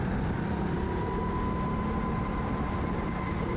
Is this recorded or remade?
recorded